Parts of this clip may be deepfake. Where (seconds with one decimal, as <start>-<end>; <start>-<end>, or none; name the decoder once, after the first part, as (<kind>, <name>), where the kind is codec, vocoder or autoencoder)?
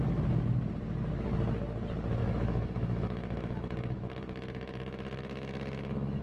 2.2-6.2 (autoencoder, DAC-VAE)